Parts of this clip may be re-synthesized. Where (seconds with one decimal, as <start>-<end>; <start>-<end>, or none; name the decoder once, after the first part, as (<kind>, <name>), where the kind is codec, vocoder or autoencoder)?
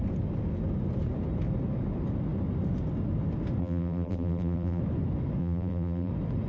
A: 3.6-4.8 (vocoder, BigVGAN v2); 5.4-6.1